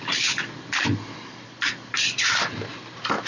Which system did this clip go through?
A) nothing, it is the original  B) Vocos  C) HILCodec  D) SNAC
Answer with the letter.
A